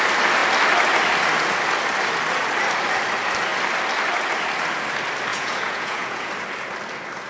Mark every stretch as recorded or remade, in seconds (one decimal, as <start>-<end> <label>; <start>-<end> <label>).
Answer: 0.0-5.3 recorded; 5.3-6.3 remade; 6.3-7.3 recorded